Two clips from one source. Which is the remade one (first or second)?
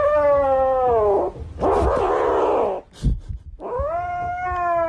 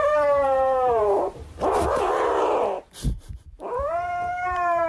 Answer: second